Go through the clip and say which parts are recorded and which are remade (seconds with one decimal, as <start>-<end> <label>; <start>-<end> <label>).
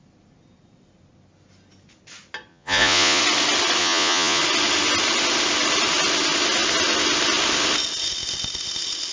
0.0-2.5 recorded; 2.5-3.2 remade; 3.2-3.8 recorded; 3.8-4.4 remade; 4.4-9.1 recorded